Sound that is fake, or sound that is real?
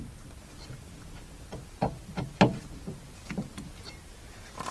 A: real